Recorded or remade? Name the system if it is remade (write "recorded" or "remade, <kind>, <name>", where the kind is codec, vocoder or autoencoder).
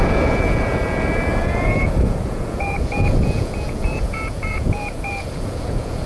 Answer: remade, vocoder, Vocos